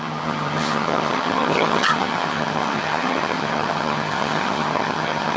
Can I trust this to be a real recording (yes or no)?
no